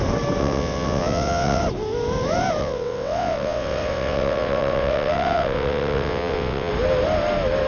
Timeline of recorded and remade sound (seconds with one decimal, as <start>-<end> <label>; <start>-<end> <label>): 0.0-0.4 recorded; 0.4-1.6 remade; 1.6-2.6 recorded; 2.6-6.7 remade; 6.7-7.7 recorded